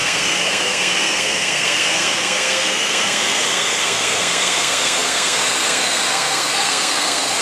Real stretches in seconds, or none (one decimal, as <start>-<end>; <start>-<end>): none